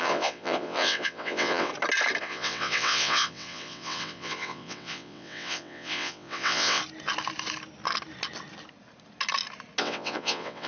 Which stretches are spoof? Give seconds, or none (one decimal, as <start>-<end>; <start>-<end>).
0.0-1.7; 2.2-6.8; 9.8-10.7